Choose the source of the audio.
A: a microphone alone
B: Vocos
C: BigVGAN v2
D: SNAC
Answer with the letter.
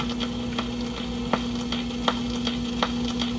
A